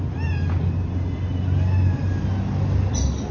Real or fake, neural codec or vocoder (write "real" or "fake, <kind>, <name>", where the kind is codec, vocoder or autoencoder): real